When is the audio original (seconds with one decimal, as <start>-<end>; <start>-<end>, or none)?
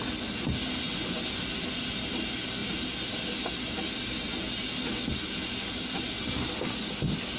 0.0-7.4